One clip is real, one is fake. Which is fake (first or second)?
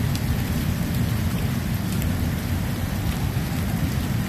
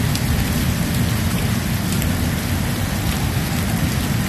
first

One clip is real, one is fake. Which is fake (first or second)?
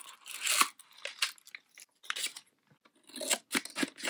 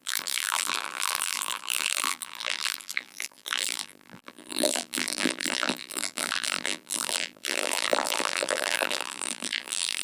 second